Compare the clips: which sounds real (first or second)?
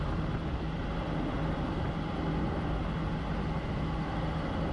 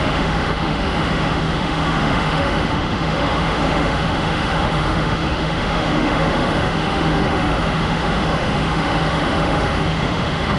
first